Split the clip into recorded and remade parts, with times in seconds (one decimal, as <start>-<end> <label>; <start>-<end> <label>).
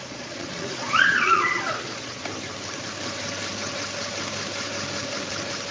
0.0-2.2 remade; 2.2-5.7 recorded